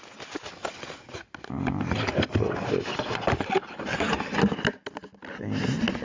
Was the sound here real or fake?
real